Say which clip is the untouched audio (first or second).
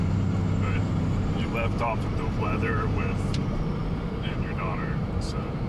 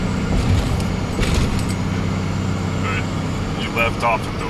second